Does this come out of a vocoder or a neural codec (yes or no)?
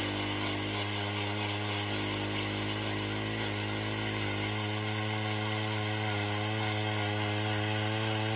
no